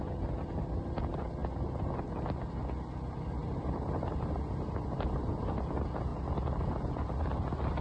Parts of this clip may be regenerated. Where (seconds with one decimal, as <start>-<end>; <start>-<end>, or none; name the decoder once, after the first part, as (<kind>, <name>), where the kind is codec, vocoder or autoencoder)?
3.4-5.0 (vocoder, BigVGAN v2)